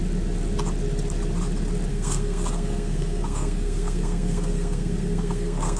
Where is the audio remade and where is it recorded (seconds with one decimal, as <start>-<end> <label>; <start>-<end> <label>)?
0.0-1.9 recorded; 1.9-5.8 remade